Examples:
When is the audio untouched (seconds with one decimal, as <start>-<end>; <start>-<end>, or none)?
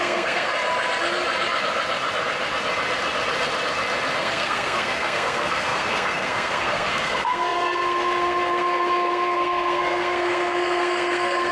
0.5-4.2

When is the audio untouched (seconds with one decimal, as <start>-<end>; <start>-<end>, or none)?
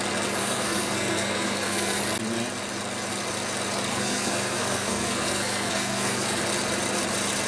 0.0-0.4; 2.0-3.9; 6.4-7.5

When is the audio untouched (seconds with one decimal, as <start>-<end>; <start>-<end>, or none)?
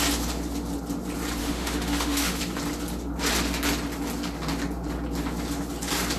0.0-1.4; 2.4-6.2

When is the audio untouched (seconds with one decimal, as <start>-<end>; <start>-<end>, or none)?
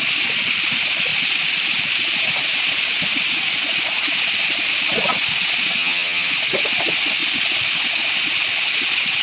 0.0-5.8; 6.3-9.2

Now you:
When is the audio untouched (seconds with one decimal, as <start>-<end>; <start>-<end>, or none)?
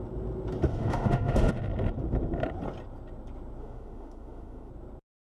0.0-0.7; 1.5-3.6; 4.7-5.3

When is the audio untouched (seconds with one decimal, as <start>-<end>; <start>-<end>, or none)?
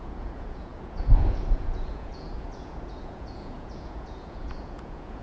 none